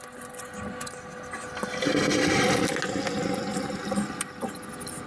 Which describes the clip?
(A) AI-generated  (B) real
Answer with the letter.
B